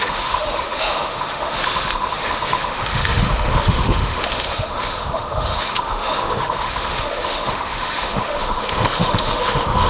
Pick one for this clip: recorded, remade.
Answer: remade